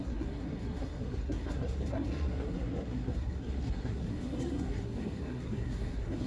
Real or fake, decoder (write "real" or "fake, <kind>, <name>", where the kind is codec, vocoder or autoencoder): fake, codec, SNAC